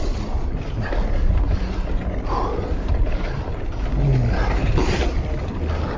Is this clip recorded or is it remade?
recorded